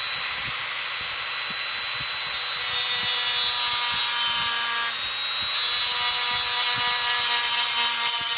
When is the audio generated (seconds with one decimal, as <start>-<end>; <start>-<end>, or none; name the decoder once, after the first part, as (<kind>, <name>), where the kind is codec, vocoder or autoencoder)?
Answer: none